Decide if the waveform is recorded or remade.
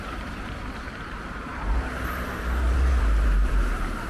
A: remade